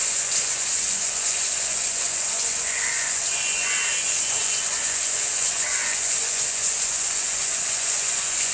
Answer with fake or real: fake